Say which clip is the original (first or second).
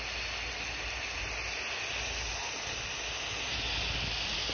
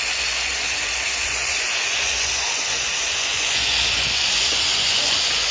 first